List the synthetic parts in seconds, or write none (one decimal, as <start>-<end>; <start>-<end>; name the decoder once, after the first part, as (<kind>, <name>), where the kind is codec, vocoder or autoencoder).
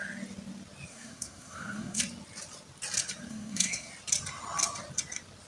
0.9-2.0 (codec, SNAC); 3.3-3.9